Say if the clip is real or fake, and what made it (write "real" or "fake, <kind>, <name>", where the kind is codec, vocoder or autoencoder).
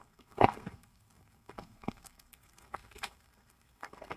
fake, codec, SNAC